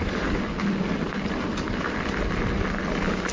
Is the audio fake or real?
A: real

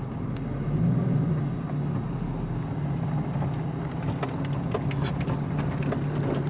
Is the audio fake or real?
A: real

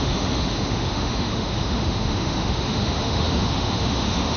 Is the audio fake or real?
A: fake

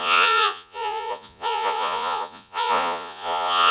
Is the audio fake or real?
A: fake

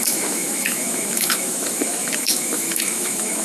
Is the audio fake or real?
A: fake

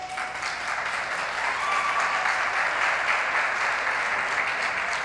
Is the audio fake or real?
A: real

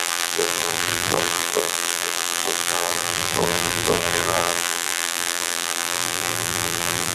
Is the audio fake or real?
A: fake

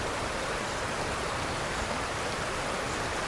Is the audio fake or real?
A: real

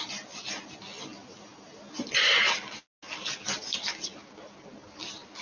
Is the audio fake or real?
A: real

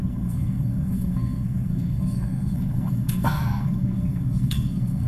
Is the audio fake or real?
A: fake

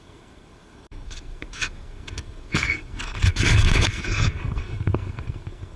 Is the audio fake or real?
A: fake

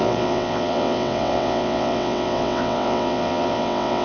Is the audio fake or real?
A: fake